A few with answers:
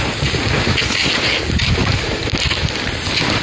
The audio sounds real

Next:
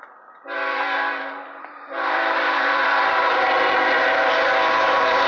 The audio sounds fake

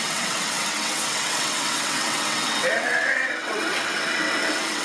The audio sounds fake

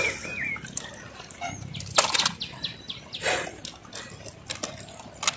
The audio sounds real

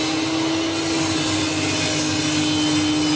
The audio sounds real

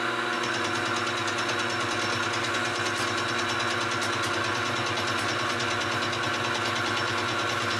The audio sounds real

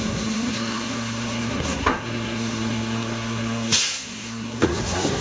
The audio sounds fake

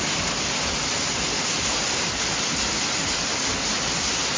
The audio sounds real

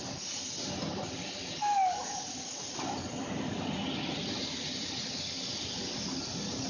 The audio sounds real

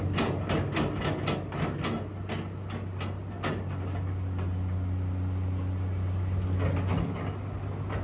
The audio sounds real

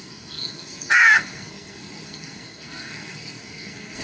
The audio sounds fake